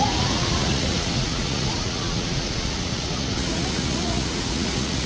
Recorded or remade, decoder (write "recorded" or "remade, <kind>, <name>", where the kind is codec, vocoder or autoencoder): remade, vocoder, Vocos